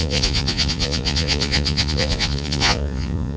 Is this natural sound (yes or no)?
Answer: no